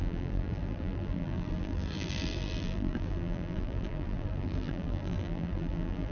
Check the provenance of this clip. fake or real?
fake